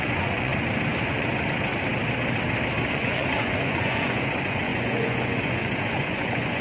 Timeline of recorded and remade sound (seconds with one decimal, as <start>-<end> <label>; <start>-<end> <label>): 0.0-0.5 remade; 0.5-1.0 recorded; 1.0-1.7 remade; 1.7-2.9 recorded; 2.9-6.6 remade

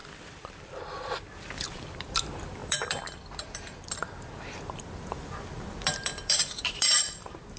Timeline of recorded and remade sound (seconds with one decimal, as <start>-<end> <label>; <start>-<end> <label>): 0.0-7.6 remade

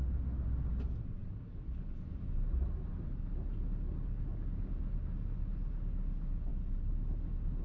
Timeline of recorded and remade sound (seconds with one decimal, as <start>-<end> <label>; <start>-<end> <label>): 0.0-7.6 recorded

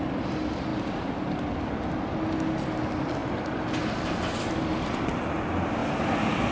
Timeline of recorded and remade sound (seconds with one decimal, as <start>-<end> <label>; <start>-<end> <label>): 0.0-0.7 recorded; 0.7-2.0 remade; 2.0-5.8 recorded; 5.8-6.5 remade